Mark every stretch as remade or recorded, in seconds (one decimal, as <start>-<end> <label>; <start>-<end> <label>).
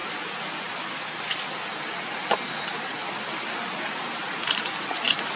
0.0-5.4 recorded